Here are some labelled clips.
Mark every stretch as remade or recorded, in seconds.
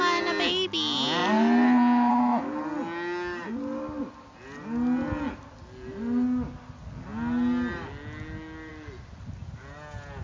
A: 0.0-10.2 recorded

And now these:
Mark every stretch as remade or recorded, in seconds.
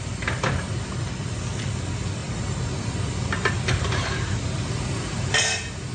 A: 0.0-5.9 recorded